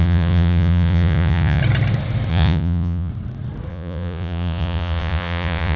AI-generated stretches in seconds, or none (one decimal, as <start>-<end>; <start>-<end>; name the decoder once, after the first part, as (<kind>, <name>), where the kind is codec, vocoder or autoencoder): 0.0-1.6 (vocoder, Vocos); 2.3-3.1; 3.7-5.8